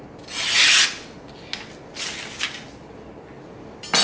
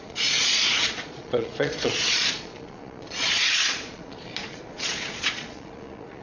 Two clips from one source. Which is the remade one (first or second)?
second